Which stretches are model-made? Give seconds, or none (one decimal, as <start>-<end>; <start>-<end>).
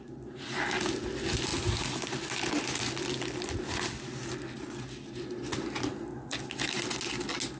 none